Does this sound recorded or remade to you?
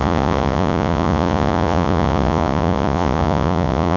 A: remade